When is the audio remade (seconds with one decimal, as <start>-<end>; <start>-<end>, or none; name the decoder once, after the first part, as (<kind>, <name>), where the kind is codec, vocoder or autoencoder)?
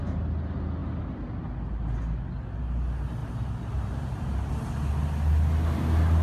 3.2-4.5 (vocoder, BigVGAN v2)